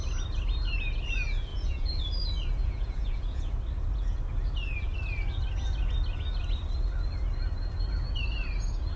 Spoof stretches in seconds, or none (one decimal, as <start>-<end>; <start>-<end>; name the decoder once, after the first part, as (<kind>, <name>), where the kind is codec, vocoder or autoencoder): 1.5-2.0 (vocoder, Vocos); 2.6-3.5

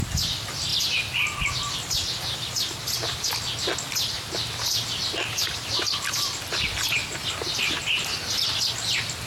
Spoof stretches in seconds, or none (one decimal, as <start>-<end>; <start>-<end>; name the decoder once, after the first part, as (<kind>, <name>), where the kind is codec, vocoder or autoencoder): none

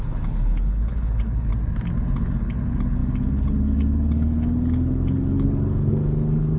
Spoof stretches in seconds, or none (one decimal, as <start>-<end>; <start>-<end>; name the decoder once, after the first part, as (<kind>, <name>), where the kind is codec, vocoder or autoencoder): 0.0-1.5 (codec, HILCodec); 2.0-6.6

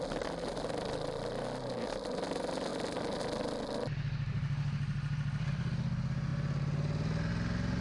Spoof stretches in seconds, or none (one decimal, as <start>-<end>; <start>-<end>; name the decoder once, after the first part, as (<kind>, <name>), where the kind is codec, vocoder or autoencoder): none

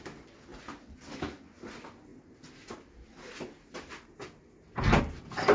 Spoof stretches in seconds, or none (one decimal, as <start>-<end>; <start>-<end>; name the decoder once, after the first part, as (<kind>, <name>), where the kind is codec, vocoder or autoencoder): none

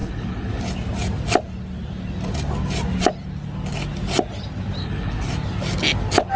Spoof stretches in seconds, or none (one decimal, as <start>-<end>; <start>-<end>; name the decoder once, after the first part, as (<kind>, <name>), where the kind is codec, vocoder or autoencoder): 0.0-0.6 (codec, HILCodec); 4.8-5.3

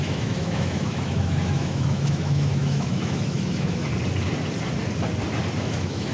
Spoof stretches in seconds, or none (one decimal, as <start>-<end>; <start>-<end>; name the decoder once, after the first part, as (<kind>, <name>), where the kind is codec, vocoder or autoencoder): 0.0-3.9 (autoencoder, DAC-VAE); 5.6-6.1